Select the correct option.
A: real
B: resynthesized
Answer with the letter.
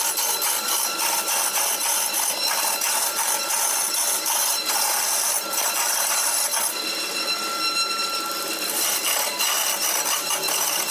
B